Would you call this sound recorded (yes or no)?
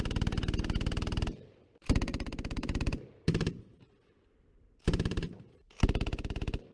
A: yes